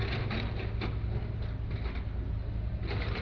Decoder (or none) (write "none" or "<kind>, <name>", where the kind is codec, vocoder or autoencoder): none